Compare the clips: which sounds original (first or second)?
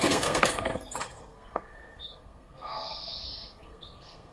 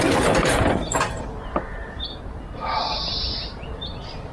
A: second